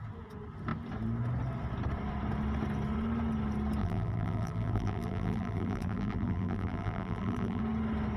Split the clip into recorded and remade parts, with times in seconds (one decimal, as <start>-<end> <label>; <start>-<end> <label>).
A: 0.0-3.8 recorded; 3.8-7.6 remade; 7.6-8.2 recorded